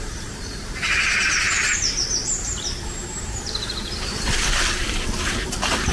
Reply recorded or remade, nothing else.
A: remade